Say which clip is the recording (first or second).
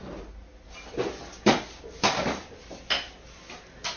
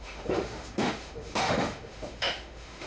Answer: first